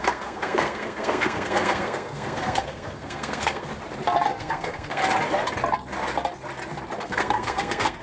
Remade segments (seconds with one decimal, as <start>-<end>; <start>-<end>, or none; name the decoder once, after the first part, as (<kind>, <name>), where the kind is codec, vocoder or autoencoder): 0.0-3.7 (codec, SNAC); 4.4-5.0; 7.0-8.0